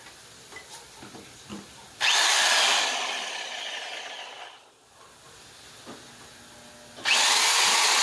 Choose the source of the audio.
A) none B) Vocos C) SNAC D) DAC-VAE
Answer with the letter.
A